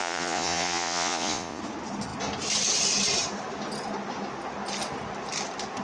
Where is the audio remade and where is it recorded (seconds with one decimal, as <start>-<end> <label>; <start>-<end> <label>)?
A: 0.0-1.6 remade; 1.6-5.8 recorded